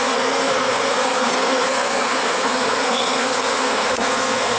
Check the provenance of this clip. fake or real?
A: fake